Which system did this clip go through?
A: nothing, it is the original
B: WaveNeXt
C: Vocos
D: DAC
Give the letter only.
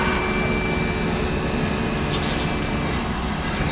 A